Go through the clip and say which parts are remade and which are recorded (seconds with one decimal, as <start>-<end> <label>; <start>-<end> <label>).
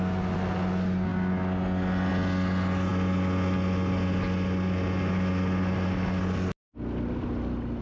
0.0-7.8 recorded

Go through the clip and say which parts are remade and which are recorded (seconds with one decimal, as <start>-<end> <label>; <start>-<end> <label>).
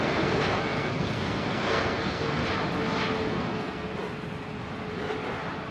0.0-2.4 remade; 2.4-3.3 recorded; 3.3-3.9 remade; 3.9-5.7 recorded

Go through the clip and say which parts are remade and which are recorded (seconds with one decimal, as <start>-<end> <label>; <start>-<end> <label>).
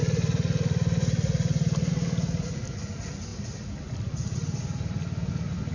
0.0-5.7 recorded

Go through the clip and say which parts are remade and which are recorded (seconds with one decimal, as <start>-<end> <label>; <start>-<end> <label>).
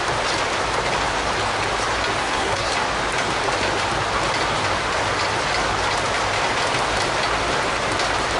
0.0-2.2 recorded; 2.2-2.7 remade; 2.7-8.4 recorded